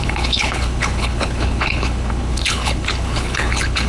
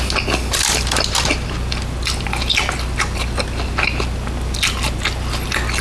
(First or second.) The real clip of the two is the second